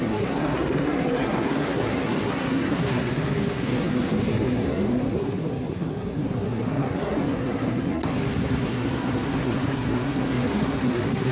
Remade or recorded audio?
remade